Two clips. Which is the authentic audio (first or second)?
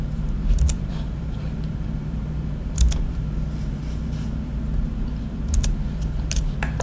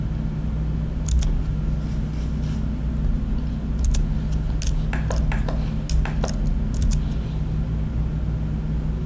second